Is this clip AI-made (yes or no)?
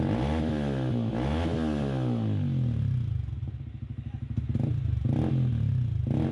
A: no